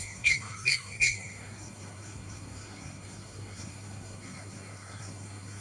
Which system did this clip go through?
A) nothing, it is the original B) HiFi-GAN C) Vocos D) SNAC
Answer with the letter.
D